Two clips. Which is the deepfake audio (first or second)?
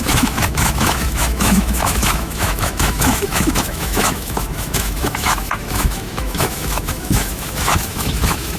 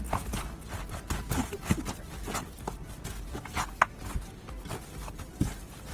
first